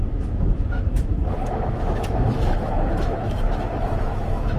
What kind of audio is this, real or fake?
fake